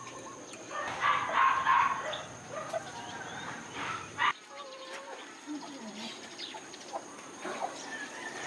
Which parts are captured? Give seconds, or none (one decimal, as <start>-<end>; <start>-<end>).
0.0-1.7; 2.7-3.3; 8.0-8.5